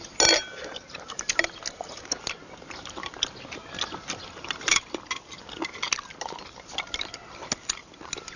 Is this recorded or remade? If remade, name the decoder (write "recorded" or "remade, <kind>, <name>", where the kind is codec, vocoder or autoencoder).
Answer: recorded